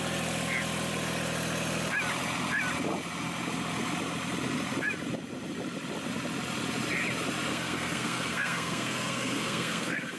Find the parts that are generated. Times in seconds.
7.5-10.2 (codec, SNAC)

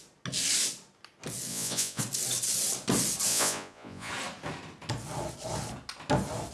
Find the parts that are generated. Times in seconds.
1.5-2.0 (vocoder, Vocos); 3.3-4.1

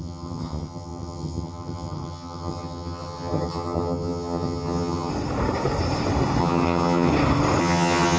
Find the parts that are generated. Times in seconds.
0.0-5.1 (vocoder, HiFi-GAN); 6.4-7.1; 7.6-8.2

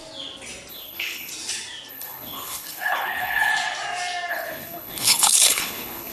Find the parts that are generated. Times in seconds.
0.7-1.3 (codec, HILCodec); 1.9-3.5; 4.3-6.1